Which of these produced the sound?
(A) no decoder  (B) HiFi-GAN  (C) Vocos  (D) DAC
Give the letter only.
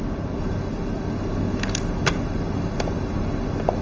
A